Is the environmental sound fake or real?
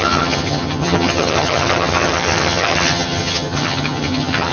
fake